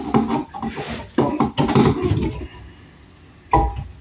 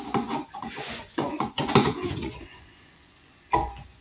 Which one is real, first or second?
first